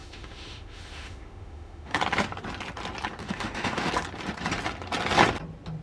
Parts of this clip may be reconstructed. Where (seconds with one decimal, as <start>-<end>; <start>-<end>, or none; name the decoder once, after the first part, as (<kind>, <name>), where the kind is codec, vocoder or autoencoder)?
0.0-2.0 (autoencoder, DAC-VAE); 3.2-3.9